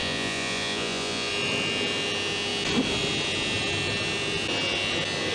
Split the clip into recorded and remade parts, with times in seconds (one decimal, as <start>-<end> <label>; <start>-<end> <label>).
0.0-1.3 remade; 1.3-5.3 recorded